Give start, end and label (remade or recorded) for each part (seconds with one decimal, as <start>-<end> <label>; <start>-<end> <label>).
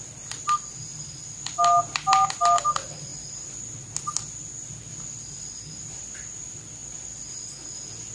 0.0-8.1 recorded